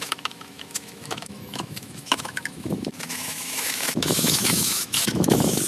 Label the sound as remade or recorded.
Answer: remade